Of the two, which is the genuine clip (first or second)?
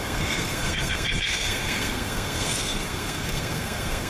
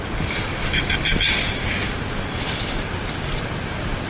second